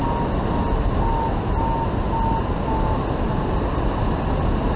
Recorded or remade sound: recorded